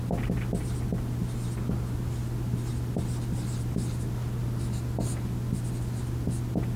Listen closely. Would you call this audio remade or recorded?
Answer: recorded